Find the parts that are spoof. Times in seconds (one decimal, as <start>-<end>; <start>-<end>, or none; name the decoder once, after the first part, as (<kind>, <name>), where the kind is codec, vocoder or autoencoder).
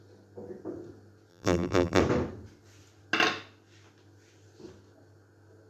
1.3-2.0 (vocoder, BigVGAN v2)